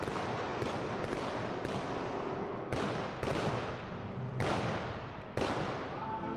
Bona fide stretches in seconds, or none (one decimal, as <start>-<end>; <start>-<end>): 0.0-6.4